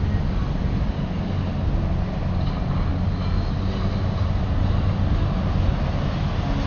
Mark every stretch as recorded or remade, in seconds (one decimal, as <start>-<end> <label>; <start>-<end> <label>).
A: 0.0-6.7 recorded